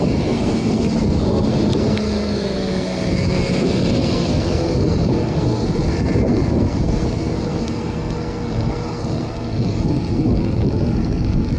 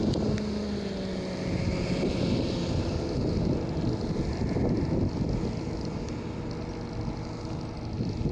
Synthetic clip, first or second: first